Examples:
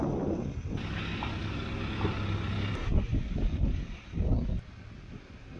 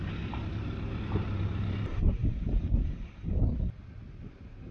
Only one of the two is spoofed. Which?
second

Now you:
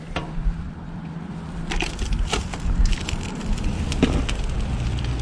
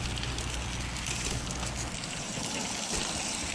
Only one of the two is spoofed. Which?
first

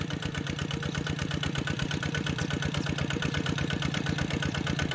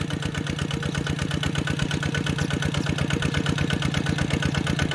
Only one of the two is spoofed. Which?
first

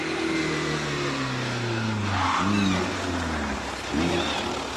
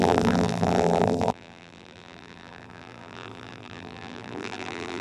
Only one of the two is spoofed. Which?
second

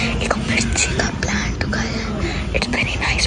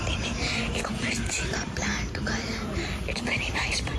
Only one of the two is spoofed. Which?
second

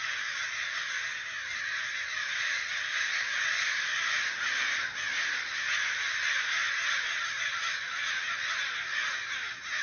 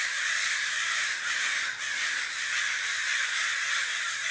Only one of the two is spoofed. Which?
second